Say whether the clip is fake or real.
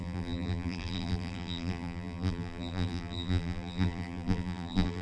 fake